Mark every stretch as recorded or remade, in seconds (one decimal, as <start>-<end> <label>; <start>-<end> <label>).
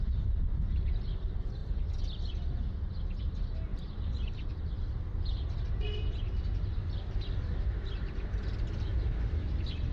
0.0-1.6 remade; 1.6-3.2 recorded; 3.2-9.9 remade